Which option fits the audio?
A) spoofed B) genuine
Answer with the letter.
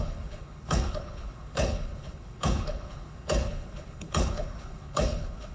A